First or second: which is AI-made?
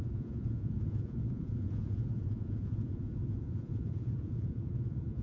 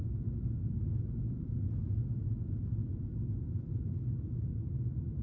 first